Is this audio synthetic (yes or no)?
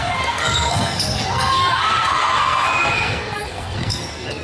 yes